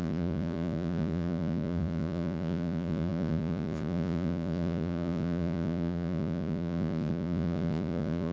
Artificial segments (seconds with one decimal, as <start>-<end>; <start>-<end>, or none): 0.0-8.3